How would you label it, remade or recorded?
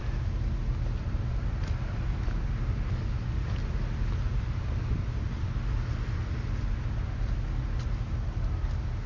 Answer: recorded